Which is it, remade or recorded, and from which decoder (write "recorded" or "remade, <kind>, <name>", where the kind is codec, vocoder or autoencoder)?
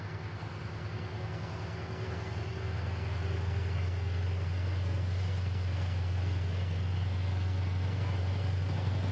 remade, codec, SNAC